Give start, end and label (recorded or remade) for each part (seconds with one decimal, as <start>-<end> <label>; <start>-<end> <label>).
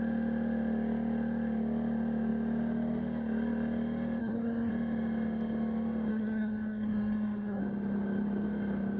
0.0-4.2 recorded; 4.2-4.7 remade; 4.7-6.1 recorded; 6.1-7.6 remade; 7.6-9.0 recorded